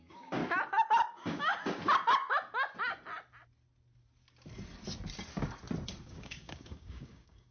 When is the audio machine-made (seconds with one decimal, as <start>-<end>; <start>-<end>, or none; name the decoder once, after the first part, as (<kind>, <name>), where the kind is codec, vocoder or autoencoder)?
0.0-0.4 (codec, DAC); 1.1-1.5; 6.0-7.5